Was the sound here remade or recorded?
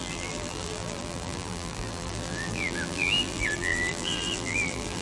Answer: remade